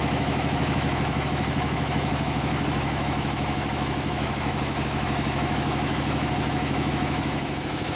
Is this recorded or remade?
remade